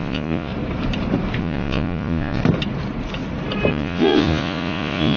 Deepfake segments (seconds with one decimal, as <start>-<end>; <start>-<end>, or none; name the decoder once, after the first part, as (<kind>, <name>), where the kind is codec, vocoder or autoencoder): 0.0-0.5 (vocoder, Vocos); 1.4-2.4; 3.7-5.2